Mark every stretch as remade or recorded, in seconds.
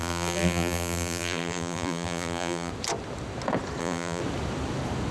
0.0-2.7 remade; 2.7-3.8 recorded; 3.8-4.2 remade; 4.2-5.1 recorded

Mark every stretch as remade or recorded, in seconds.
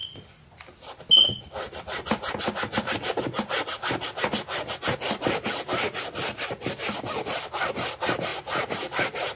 0.0-9.4 recorded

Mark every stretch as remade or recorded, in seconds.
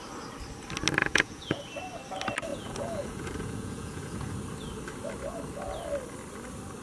0.0-1.0 recorded; 1.0-1.6 remade; 1.6-2.5 recorded; 2.5-4.3 remade; 4.3-6.8 recorded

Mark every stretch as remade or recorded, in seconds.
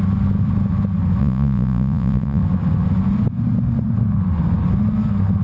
0.0-1.2 recorded; 1.2-2.4 remade; 2.4-5.4 recorded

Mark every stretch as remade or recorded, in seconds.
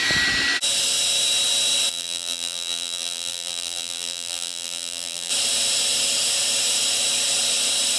0.0-1.9 recorded; 1.9-5.3 remade; 5.3-8.0 recorded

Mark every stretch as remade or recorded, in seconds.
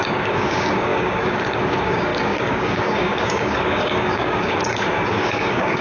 0.0-5.8 remade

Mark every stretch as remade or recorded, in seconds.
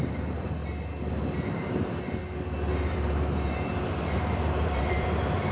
0.0-0.6 remade; 0.6-1.5 recorded; 1.5-2.2 remade; 2.2-2.9 recorded; 2.9-5.5 remade